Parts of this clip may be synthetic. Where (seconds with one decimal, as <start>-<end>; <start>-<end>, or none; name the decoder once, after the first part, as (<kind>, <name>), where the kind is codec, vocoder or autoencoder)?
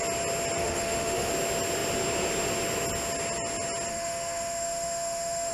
0.6-1.3 (autoencoder, DAC-VAE); 3.9-5.5